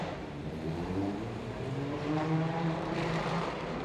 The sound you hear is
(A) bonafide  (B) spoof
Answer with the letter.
B